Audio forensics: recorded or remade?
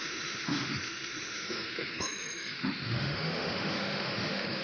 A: remade